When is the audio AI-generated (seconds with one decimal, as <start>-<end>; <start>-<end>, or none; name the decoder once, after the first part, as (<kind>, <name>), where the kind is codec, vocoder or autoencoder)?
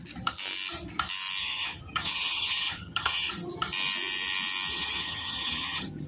1.4-3.3 (vocoder, HiFi-GAN); 4.7-6.1